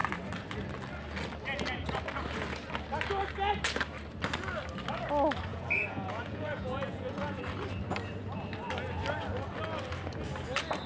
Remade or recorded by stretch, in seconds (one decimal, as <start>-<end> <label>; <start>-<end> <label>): 0.0-5.5 recorded; 5.5-7.4 remade; 7.4-10.9 recorded